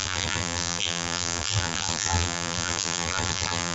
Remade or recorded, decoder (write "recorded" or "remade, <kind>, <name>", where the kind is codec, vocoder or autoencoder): remade, vocoder, BigVGAN v2